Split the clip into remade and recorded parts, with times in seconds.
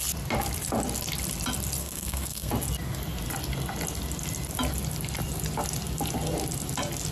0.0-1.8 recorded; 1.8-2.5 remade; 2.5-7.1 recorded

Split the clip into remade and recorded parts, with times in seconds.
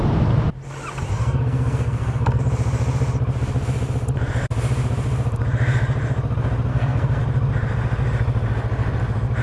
0.0-1.1 recorded; 1.1-2.4 remade; 2.4-6.7 recorded; 6.7-7.2 remade; 7.2-9.4 recorded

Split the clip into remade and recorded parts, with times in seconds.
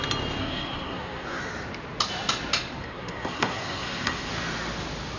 0.0-0.4 recorded; 0.4-1.4 remade; 1.4-2.8 recorded; 2.8-4.3 remade; 4.3-5.2 recorded